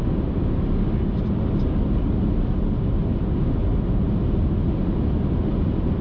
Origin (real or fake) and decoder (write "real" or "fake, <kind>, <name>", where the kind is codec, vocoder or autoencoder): real